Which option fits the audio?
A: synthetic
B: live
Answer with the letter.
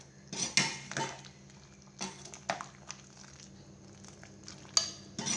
B